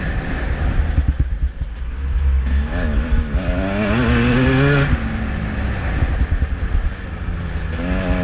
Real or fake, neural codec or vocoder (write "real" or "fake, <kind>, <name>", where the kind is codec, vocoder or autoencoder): real